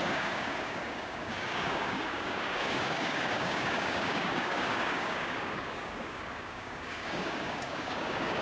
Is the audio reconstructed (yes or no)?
yes